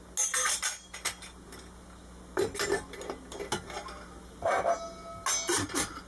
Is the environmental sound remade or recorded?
recorded